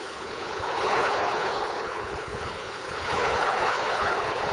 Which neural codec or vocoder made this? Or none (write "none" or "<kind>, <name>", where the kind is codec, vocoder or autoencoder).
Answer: codec, HILCodec